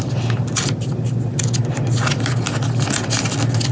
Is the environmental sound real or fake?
real